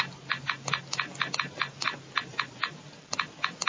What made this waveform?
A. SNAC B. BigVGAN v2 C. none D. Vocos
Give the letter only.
C